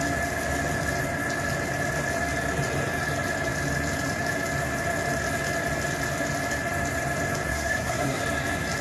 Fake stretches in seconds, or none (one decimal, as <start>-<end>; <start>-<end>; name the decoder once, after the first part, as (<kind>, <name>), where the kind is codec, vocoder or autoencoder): 7.5-8.2 (codec, SNAC)